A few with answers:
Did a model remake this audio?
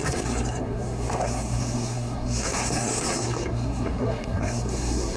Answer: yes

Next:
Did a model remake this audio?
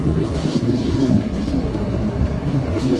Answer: yes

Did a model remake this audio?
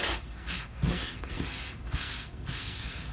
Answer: yes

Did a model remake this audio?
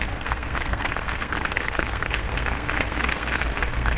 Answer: yes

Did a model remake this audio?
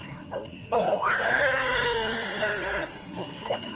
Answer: yes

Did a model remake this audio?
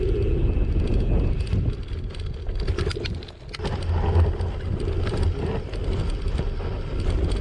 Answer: no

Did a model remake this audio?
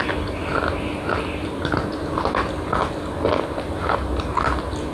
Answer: no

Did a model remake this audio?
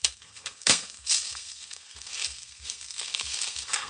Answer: yes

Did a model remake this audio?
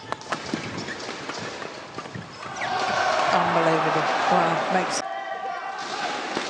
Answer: no